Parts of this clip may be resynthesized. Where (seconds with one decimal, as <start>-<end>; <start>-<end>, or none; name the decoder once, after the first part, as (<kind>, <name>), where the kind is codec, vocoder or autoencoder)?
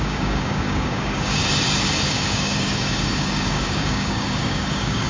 0.0-1.4 (codec, DAC); 2.0-5.1